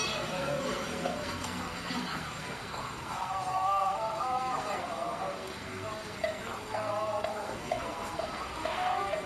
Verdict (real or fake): fake